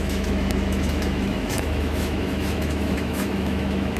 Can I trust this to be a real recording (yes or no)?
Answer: no